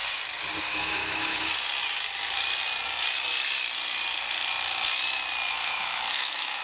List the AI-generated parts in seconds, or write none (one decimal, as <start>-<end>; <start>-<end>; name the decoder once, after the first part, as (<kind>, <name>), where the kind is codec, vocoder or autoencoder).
0.6-1.5 (autoencoder, DAC-VAE); 5.5-6.6